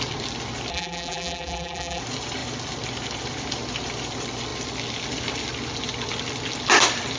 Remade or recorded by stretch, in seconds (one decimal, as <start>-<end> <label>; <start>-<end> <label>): 0.0-0.7 recorded; 0.7-2.0 remade; 2.0-7.2 recorded